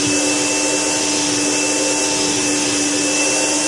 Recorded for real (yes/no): yes